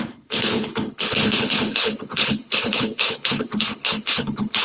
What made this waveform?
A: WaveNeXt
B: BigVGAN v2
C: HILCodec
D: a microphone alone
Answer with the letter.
C